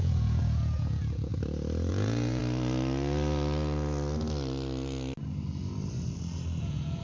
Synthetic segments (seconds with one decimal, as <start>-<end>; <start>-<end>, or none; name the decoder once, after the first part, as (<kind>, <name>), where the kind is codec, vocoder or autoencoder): 0.0-1.3 (vocoder, Vocos); 1.9-2.4; 6.6-7.0